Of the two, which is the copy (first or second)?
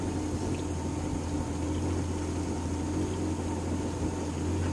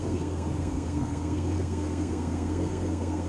second